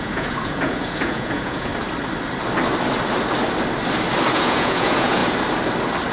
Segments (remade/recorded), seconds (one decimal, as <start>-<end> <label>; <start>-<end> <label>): 0.0-1.7 remade; 1.7-4.3 recorded; 4.3-5.2 remade; 5.2-6.1 recorded